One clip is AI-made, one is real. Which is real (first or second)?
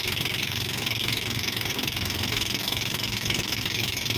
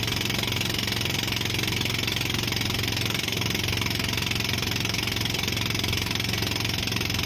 second